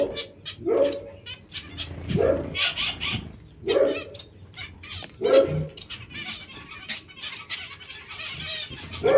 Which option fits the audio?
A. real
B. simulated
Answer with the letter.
A